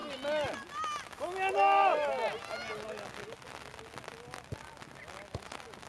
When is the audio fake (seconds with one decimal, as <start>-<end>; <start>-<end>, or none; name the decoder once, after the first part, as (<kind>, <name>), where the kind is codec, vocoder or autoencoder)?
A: none